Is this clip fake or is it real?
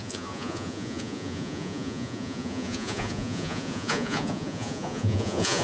fake